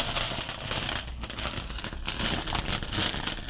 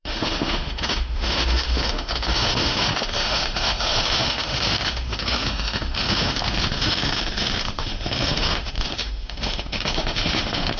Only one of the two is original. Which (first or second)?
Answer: first